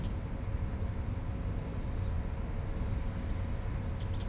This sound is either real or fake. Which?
real